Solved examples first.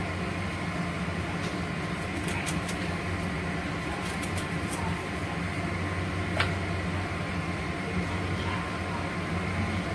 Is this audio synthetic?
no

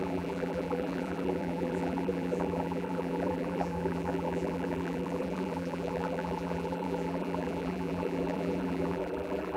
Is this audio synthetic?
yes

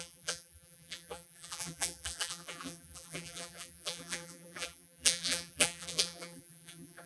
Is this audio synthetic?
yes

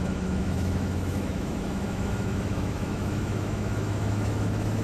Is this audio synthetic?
yes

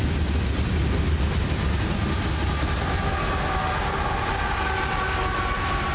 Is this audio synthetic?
no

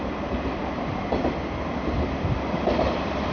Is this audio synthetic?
no